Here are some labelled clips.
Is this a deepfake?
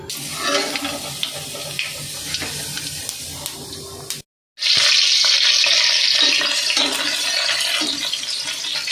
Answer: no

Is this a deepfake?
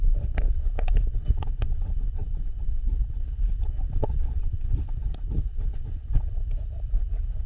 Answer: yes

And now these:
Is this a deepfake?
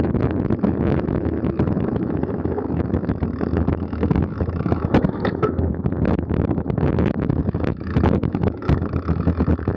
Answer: yes